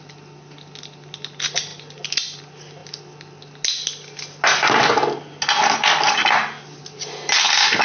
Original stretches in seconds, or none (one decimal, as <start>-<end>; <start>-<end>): 0.0-7.8